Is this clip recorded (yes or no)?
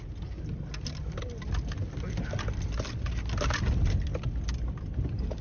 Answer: yes